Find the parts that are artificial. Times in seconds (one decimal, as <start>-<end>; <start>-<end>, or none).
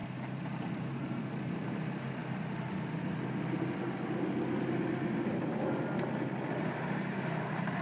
0.0-2.2; 6.6-7.8